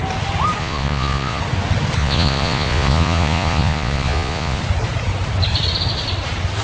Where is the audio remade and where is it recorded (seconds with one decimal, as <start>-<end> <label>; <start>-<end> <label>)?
0.0-0.6 recorded; 0.6-1.4 remade; 1.4-2.0 recorded; 2.0-4.6 remade; 4.6-6.6 recorded